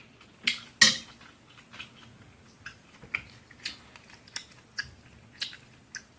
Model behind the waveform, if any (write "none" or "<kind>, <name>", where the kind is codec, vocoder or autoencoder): none